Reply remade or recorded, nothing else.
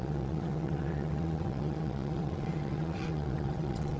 remade